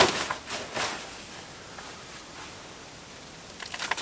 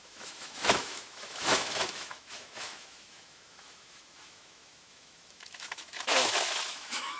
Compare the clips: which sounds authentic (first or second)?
first